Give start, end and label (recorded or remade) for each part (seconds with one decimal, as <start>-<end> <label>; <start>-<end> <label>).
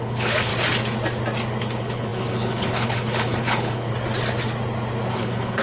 0.0-0.5 remade; 0.5-1.6 recorded; 1.6-3.9 remade; 3.9-5.1 recorded; 5.1-5.6 remade